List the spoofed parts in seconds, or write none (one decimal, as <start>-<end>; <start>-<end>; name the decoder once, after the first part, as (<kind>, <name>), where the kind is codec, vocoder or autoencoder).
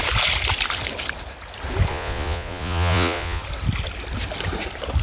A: 1.9-3.4 (vocoder, Vocos)